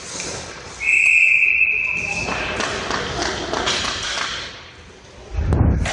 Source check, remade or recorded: recorded